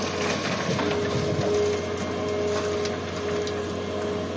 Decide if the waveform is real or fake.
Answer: real